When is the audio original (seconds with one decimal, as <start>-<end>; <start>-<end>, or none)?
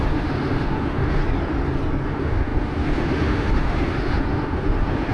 1.2-2.1